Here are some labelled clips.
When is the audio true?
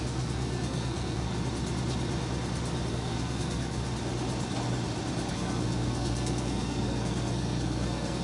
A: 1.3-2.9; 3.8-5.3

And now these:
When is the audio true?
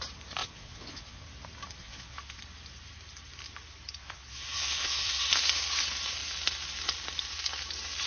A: 0.0-0.4; 1.2-1.8; 2.4-4.0; 5.2-8.1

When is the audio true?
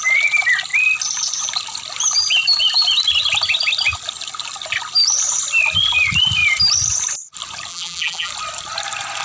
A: 0.0-7.7; 8.3-9.2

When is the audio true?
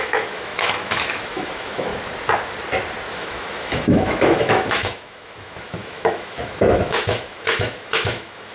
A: 1.9-3.1